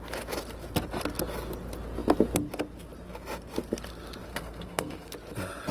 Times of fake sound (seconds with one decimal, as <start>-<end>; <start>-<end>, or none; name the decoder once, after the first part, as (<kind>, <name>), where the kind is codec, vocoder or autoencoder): 4.3-5.1 (codec, SNAC)